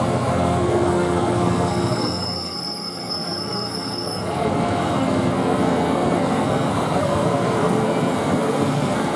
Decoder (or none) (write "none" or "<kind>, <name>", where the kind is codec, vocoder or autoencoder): codec, SNAC